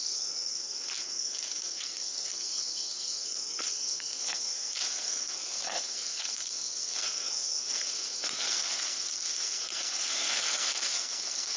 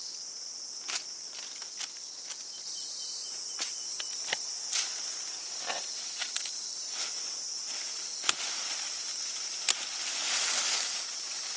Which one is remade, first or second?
first